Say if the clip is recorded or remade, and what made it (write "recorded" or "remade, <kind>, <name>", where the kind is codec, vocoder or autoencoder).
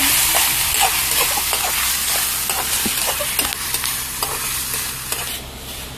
recorded